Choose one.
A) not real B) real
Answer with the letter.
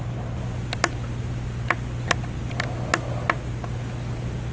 B